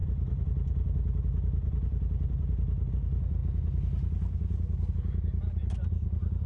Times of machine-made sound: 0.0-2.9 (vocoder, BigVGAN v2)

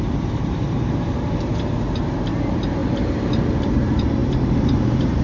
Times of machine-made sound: 0.0-1.5 (vocoder, BigVGAN v2); 2.0-5.2

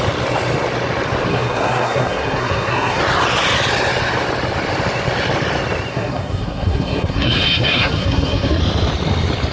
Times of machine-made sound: 1.3-3.0 (codec, SNAC); 5.9-8.6

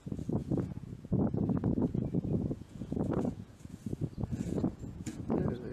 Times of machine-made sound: 0.4-3.8 (vocoder, Vocos); 4.2-5.2

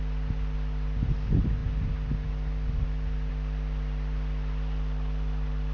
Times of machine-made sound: none

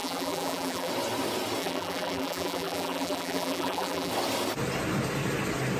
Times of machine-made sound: 0.0-0.9 (vocoder, BigVGAN v2); 1.6-4.1

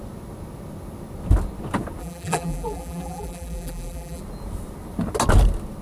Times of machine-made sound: 2.0-4.2 (vocoder, BigVGAN v2)